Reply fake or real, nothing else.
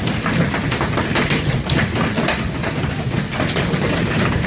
real